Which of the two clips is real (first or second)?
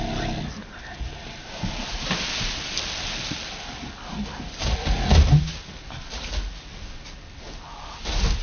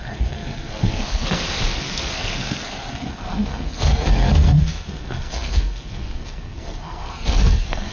first